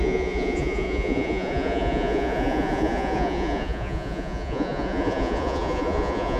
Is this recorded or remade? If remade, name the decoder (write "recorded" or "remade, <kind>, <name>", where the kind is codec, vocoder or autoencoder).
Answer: remade, vocoder, Vocos